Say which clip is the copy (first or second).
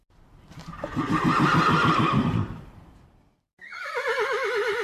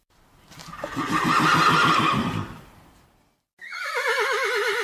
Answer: first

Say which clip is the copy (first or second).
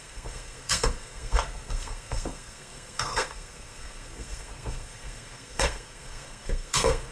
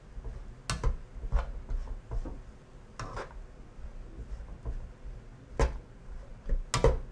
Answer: first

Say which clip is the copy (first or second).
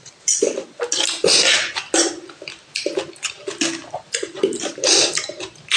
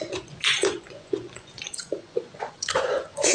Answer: second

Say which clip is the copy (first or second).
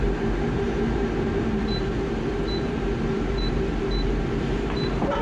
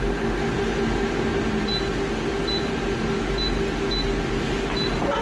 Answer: first